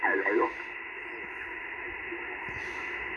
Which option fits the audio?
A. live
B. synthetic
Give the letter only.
A